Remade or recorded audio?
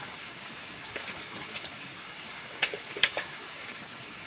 remade